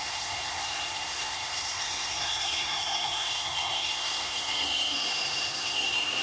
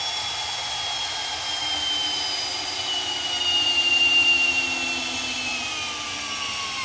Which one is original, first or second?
second